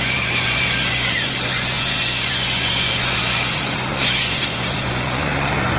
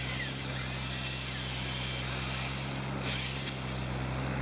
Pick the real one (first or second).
second